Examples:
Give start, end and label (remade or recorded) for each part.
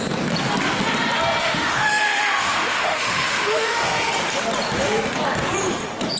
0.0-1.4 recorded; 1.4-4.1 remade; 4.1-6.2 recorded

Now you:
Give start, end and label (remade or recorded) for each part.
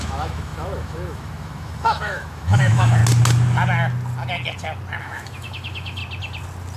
0.0-3.0 remade; 3.0-5.0 recorded; 5.0-6.0 remade; 6.0-6.8 recorded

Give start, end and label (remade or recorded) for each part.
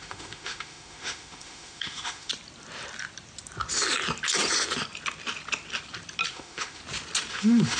0.0-2.3 remade; 2.3-6.3 recorded; 6.3-6.8 remade; 6.8-7.3 recorded; 7.3-7.8 remade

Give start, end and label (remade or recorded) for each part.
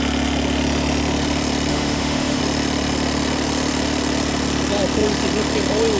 0.0-1.7 recorded; 1.7-2.4 remade; 2.4-6.0 recorded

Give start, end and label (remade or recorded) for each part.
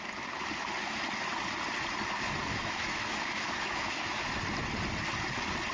0.0-2.5 recorded; 2.5-4.2 remade; 4.2-5.7 recorded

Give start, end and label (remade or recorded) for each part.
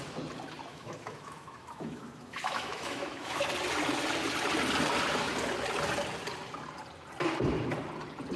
0.0-0.7 recorded; 0.7-3.4 remade; 3.4-8.4 recorded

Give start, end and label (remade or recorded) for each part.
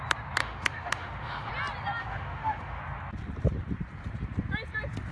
0.0-0.4 recorded; 0.4-1.5 remade; 1.5-2.0 recorded; 2.0-2.8 remade; 2.8-5.1 recorded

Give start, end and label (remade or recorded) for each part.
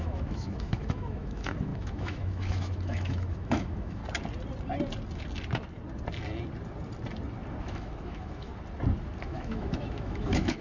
0.0-4.0 remade; 4.0-7.6 recorded; 7.6-8.5 remade; 8.5-9.2 recorded; 9.2-10.6 remade